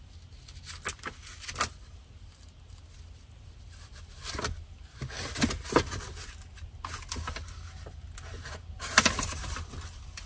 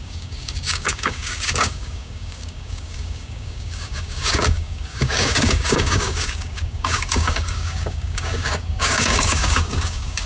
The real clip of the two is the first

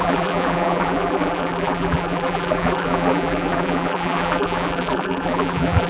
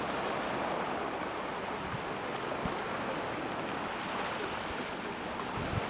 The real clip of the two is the second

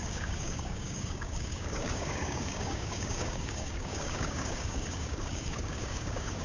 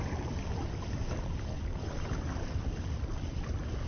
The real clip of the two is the second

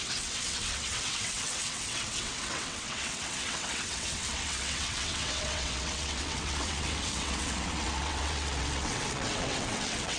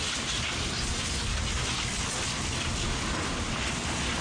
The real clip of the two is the second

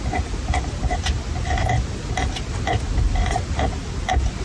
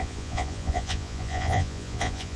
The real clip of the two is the first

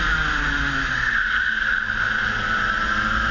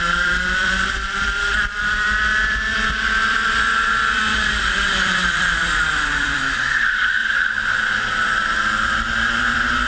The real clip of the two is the first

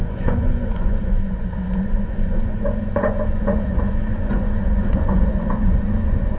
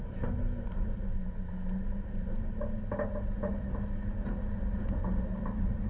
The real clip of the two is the second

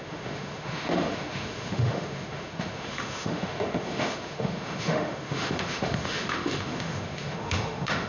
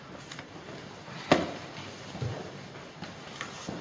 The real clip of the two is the second